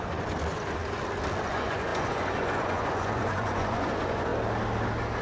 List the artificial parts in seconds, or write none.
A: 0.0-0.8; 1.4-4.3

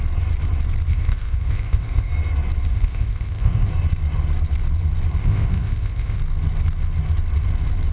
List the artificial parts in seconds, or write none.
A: 0.9-2.1; 2.7-3.7; 5.2-6.2

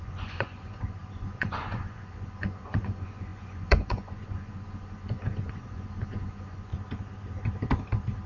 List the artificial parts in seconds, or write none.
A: 0.0-6.7

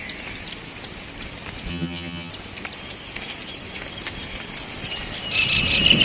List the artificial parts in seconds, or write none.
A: 1.7-2.3

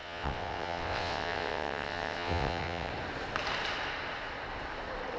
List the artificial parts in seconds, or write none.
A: 0.0-2.9